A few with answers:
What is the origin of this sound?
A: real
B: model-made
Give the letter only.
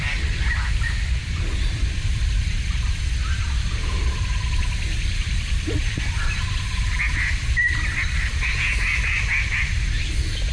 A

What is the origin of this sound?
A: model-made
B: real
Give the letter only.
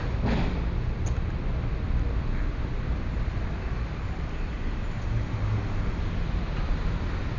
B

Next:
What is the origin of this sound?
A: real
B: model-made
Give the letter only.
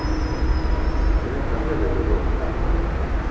A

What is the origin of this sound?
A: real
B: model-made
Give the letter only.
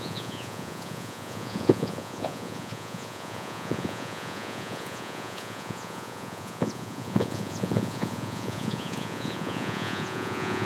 B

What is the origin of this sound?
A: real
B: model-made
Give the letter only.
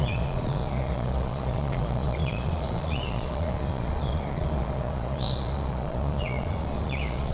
B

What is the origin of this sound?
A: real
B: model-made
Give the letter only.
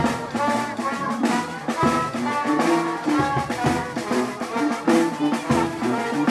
A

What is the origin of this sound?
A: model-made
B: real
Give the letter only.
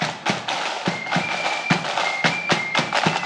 B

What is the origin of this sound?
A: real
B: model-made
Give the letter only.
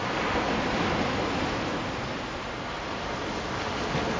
A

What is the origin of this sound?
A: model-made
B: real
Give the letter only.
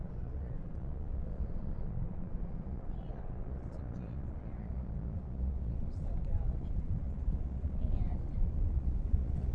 A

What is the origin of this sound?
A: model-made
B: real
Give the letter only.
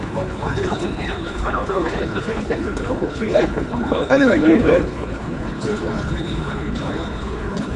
A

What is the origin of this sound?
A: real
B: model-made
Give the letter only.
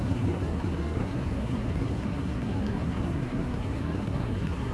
B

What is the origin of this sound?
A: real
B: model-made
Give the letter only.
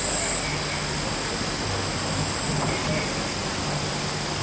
A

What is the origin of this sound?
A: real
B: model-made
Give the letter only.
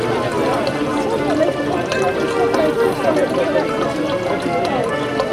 A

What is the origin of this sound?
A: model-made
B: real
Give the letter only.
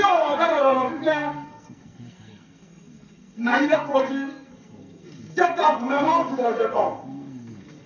A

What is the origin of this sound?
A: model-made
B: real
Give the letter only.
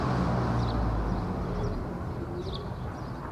B